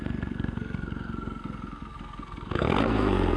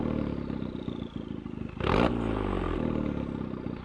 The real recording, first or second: second